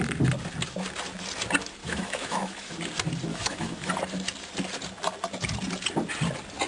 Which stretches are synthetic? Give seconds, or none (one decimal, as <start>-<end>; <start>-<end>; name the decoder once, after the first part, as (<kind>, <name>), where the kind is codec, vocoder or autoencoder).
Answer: 1.8-2.7 (autoencoder, DAC-VAE); 3.3-3.9